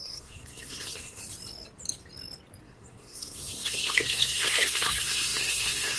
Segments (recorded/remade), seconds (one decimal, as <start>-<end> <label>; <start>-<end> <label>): 0.0-1.2 remade; 1.2-2.6 recorded; 2.6-6.0 remade